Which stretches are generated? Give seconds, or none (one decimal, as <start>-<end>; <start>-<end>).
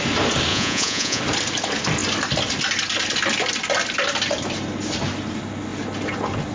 0.5-1.2